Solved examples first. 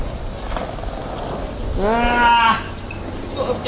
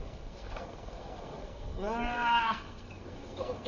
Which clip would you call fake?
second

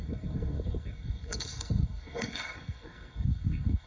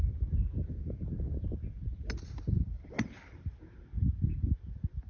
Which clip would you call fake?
first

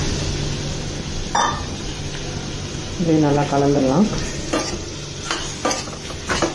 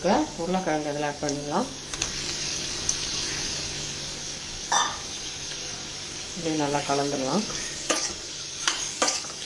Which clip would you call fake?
second